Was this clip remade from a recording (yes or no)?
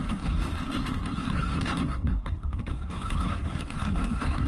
yes